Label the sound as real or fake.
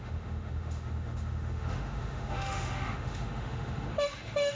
fake